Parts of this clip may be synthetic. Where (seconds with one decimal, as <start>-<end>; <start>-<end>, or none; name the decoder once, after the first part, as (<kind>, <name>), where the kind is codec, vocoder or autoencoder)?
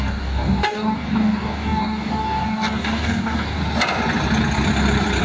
0.0-3.6 (codec, DAC)